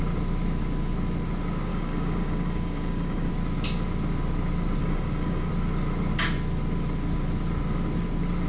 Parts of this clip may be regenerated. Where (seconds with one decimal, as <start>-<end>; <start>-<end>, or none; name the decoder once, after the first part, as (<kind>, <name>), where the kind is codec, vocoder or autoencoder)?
1.7-3.3 (codec, DAC); 4.8-5.5